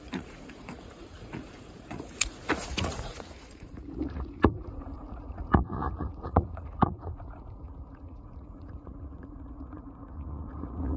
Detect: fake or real fake